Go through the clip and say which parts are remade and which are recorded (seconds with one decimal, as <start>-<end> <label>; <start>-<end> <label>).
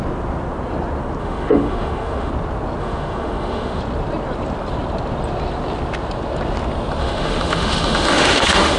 0.0-1.2 recorded; 1.2-2.3 remade; 2.3-2.8 recorded; 2.8-3.8 remade; 3.8-7.0 recorded; 7.0-8.8 remade